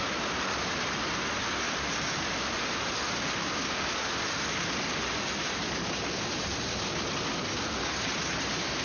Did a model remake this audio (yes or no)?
no